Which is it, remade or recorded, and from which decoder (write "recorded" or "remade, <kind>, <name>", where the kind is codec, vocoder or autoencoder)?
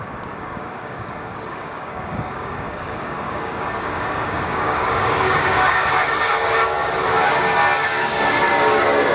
remade, codec, DAC